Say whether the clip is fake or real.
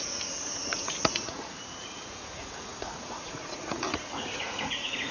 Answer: fake